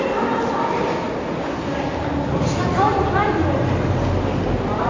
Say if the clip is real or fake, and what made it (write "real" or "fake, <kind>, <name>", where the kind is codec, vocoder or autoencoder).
real